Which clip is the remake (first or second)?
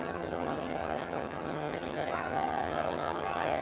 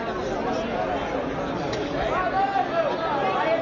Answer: first